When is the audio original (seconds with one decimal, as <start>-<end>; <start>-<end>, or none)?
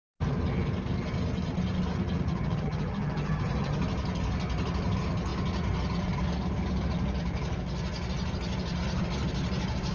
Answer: 0.0-2.3; 3.8-9.9